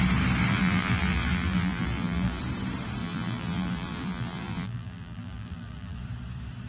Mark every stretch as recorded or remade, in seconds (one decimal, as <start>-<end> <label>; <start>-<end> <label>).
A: 0.0-0.5 recorded; 0.5-2.4 remade; 2.4-3.0 recorded; 3.0-6.0 remade; 6.0-6.7 recorded